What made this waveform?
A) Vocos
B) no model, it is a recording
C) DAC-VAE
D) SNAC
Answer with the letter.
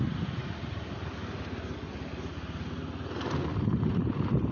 B